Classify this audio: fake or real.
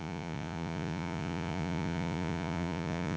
fake